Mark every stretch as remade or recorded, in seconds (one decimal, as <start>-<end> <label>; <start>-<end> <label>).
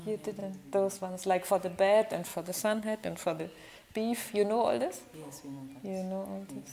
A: 0.0-2.3 recorded; 2.3-3.4 remade; 3.4-6.7 recorded